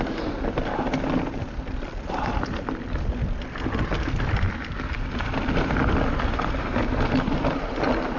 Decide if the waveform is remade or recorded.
recorded